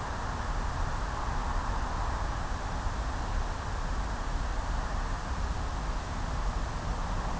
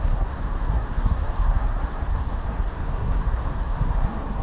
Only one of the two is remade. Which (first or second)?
second